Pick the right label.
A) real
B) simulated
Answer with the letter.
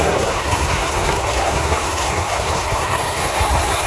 B